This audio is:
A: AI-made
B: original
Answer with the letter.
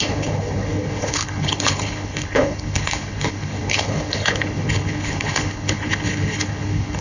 A